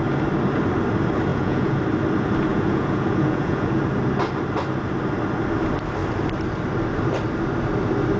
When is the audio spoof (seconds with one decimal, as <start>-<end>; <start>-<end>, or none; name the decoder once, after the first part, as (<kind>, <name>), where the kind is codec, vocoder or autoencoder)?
1.3-1.8 (vocoder, Vocos); 2.5-3.8